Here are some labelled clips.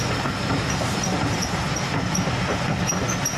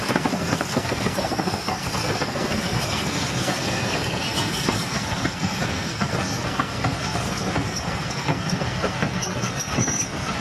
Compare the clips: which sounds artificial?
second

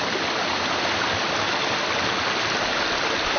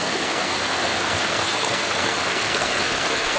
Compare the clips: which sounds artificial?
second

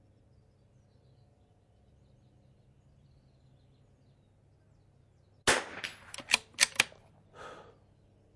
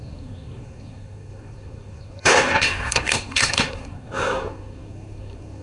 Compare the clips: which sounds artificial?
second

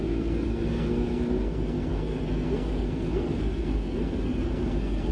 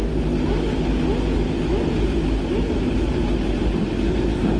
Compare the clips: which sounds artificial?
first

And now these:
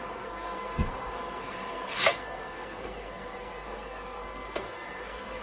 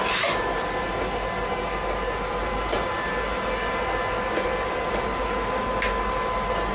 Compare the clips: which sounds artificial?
first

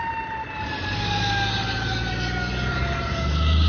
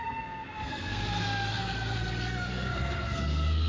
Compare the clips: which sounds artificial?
second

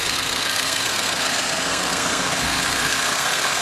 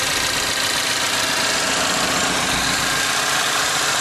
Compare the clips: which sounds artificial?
first